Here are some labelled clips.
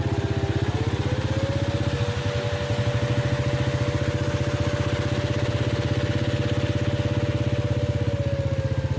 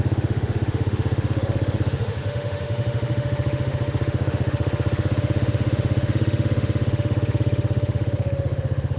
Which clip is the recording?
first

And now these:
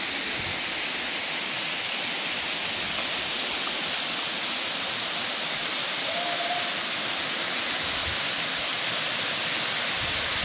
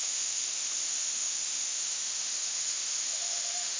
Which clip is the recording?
first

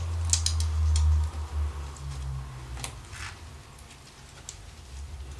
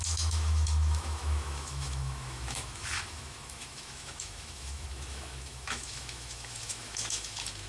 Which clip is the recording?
first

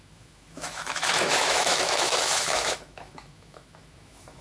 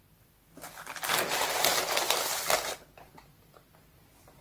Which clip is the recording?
second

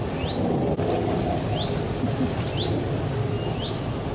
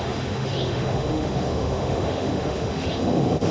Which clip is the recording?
first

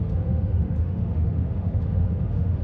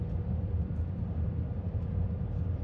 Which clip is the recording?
second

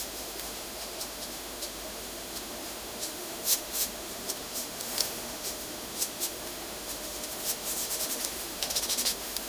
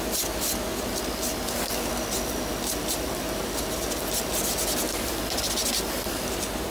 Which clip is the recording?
second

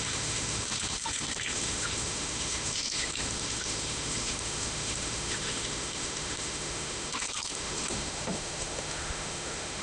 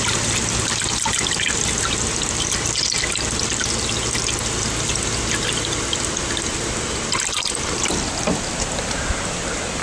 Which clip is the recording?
second